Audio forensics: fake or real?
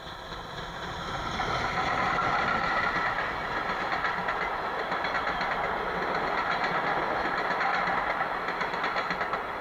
real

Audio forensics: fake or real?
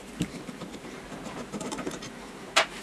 fake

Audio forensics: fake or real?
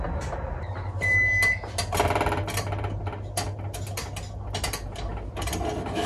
real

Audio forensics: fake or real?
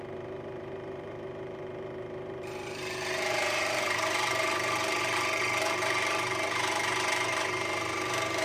fake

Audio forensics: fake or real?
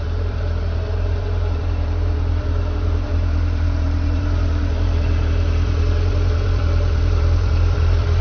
fake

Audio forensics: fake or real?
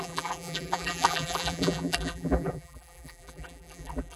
fake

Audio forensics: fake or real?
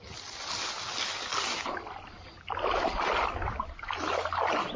real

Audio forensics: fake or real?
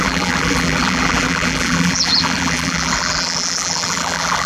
fake